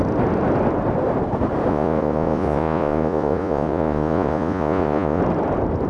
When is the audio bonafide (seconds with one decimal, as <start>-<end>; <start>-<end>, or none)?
0.0-1.7; 5.2-5.9